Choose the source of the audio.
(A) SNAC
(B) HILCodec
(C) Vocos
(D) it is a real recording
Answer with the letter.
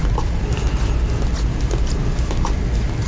D